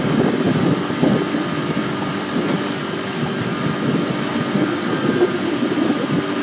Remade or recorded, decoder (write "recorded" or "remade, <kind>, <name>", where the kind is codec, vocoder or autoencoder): recorded